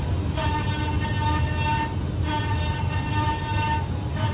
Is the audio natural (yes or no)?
yes